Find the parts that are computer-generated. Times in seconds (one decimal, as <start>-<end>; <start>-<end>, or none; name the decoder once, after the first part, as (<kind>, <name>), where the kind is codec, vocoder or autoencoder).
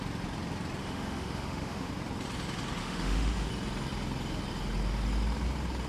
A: 0.8-1.9 (autoencoder, DAC-VAE); 2.8-3.5